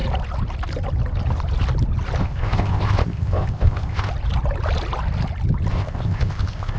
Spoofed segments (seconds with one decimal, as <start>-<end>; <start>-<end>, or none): 2.2-4.1; 5.7-6.8